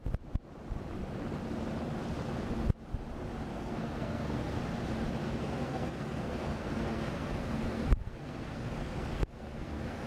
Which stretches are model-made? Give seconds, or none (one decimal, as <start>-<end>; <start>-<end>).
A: 3.5-4.6; 5.2-10.1